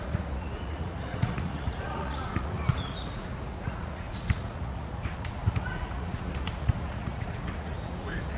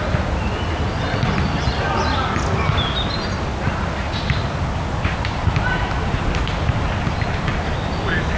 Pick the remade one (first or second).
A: first